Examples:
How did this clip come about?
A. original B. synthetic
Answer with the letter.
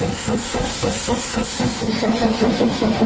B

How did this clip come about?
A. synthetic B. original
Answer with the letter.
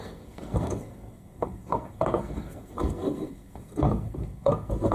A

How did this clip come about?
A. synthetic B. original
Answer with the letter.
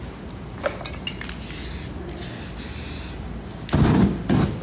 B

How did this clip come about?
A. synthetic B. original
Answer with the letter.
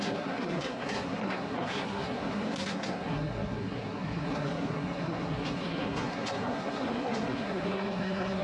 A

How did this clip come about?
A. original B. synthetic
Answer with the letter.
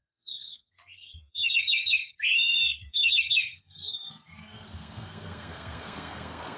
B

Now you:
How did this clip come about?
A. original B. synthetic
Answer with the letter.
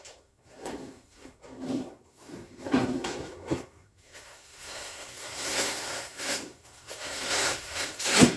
B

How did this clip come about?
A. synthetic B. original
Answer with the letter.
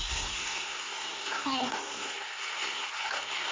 A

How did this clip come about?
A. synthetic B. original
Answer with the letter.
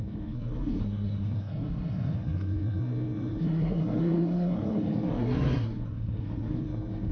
A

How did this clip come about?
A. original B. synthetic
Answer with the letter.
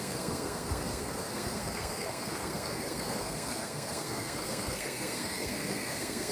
B